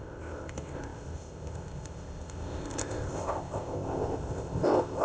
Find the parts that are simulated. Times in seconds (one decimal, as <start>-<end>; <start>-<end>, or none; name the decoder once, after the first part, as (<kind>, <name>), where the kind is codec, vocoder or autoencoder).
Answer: 0.0-5.0 (codec, ZipCodec)

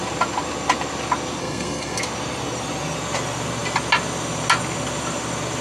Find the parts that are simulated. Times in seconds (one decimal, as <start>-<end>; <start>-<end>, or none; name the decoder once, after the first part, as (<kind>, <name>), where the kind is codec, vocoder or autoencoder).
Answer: 1.4-2.0 (codec, SNAC)

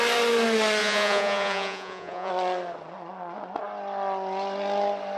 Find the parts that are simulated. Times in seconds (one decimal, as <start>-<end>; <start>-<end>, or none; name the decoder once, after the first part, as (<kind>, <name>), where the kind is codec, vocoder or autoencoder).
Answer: 0.8-2.3 (vocoder, Vocos)